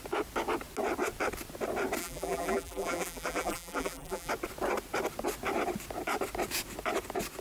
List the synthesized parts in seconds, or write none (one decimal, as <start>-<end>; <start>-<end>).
2.0-4.3